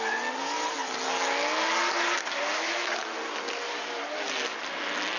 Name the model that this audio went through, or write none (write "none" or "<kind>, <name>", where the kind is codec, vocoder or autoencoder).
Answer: none